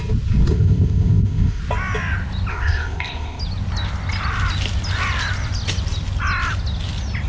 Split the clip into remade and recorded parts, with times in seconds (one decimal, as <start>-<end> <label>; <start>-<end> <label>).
0.0-0.5 recorded; 0.5-1.6 remade; 1.6-2.5 recorded; 2.5-3.4 remade; 3.4-7.3 recorded